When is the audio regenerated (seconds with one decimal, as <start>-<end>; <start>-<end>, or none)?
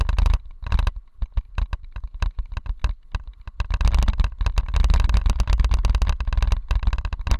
none